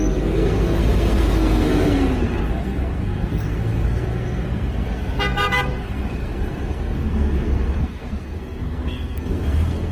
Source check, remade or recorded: remade